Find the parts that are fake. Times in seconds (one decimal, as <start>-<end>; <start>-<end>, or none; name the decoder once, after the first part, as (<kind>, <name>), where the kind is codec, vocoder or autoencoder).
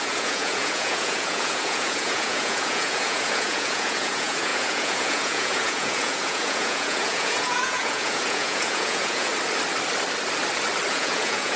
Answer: 0.0-9.3 (vocoder, Vocos); 10.9-11.6